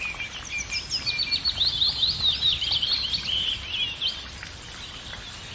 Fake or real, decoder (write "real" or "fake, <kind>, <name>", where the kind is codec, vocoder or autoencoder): real